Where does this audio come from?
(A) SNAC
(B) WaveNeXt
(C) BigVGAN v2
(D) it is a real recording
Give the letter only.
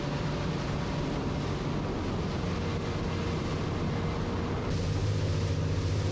D